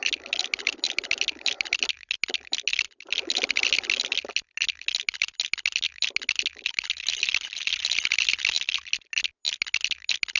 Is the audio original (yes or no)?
yes